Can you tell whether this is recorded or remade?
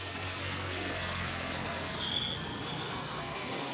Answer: remade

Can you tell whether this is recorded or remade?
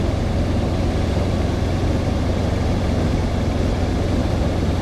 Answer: recorded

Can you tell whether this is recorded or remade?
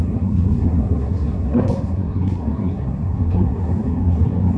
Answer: remade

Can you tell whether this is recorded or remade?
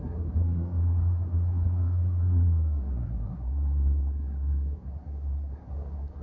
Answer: remade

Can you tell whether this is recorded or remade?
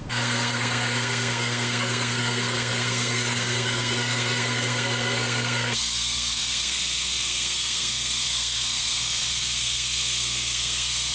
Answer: remade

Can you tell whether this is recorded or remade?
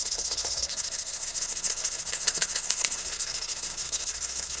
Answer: remade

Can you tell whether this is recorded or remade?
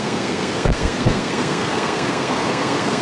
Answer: remade